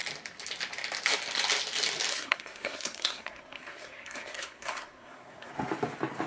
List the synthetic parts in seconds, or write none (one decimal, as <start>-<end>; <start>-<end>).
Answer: 2.1-5.5